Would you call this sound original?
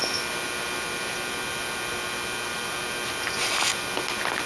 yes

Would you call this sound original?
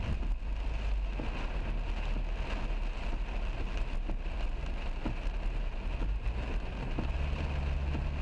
yes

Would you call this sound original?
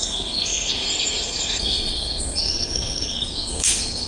no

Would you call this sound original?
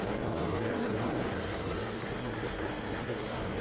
no